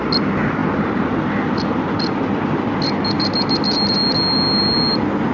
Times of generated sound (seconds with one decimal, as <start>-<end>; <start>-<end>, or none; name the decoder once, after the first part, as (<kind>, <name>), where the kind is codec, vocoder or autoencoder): none